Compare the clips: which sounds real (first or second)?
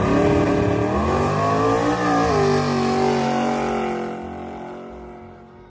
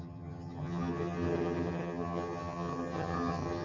first